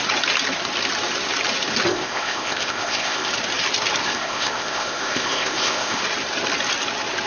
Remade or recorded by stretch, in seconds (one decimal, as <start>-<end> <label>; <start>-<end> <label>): 0.0-1.9 recorded; 1.9-3.3 remade; 3.3-4.0 recorded; 4.0-6.0 remade; 6.0-7.3 recorded